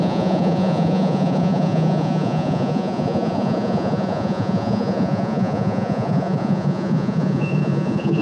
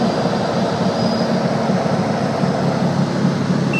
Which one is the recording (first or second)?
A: second